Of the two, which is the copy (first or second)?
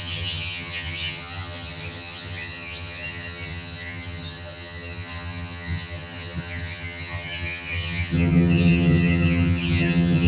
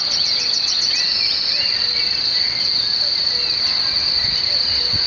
first